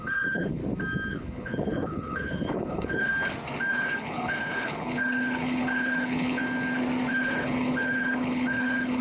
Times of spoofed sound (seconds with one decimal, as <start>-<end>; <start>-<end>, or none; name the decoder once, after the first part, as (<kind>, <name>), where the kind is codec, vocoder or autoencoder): 0.0-0.6 (codec, HILCodec); 1.1-3.1; 3.7-6.4; 7.1-9.0